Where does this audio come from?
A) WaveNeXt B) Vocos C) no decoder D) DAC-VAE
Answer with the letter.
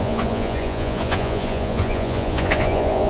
B